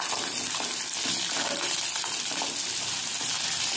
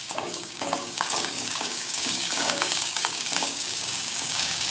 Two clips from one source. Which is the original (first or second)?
first